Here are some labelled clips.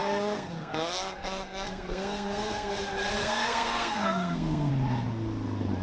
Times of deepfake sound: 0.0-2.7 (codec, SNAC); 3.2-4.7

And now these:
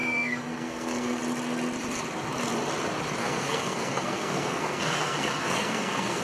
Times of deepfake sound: 0.0-1.2 (codec, SNAC); 3.2-6.2

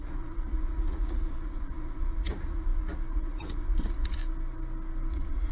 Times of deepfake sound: 0.0-4.2 (vocoder, Vocos); 5.1-5.5

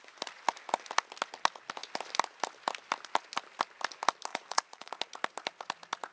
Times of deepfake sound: 4.3-4.9 (vocoder, Vocos)